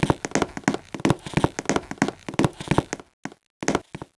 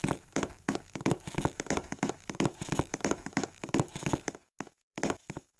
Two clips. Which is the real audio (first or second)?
first